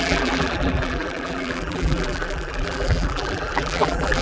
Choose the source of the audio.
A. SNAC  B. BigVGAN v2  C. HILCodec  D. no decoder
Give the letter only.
B